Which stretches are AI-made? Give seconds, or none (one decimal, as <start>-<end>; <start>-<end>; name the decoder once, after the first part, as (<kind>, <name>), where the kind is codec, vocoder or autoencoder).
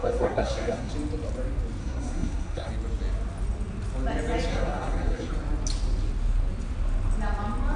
0.0-0.9 (codec, SNAC); 1.8-2.7; 4.5-5.3